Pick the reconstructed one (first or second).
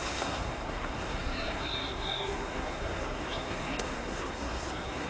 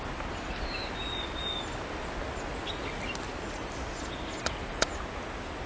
first